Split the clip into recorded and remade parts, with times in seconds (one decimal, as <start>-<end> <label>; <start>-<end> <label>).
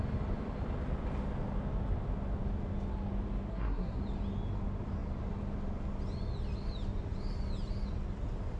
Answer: 0.0-3.5 recorded; 3.5-4.0 remade; 4.0-8.6 recorded